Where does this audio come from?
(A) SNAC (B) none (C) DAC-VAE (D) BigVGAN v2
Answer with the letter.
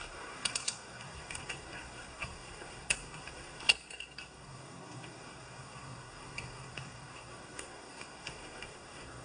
A